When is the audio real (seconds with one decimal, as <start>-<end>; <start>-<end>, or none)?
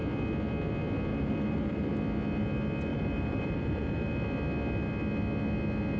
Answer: 0.0-1.1; 1.9-2.9; 4.1-6.0